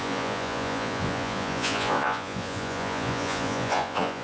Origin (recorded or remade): remade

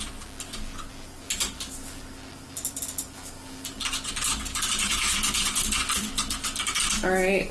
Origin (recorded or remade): recorded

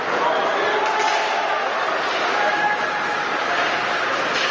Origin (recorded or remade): recorded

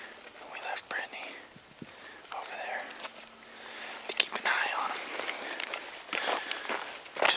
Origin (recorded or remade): recorded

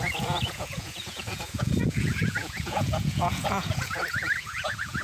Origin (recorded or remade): remade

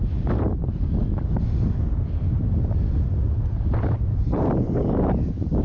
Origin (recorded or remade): recorded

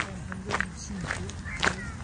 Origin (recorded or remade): recorded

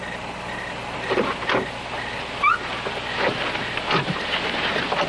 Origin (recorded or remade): recorded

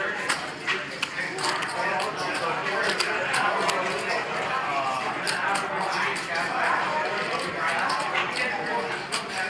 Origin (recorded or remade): recorded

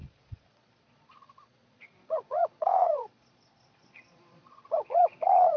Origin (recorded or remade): remade